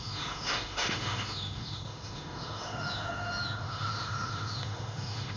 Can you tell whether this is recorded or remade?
remade